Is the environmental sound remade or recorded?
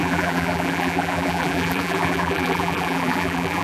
remade